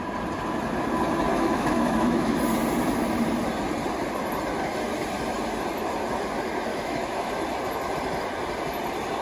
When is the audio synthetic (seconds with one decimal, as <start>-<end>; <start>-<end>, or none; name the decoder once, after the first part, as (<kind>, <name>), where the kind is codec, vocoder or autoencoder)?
1.3-2.4 (autoencoder, DAC-VAE); 6.7-7.3